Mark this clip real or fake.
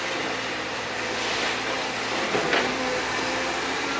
fake